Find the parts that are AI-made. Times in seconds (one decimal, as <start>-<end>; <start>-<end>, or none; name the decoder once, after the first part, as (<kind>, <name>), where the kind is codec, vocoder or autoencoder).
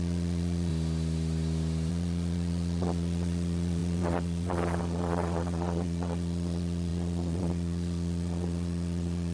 0.0-0.7 (vocoder, Vocos); 1.9-9.3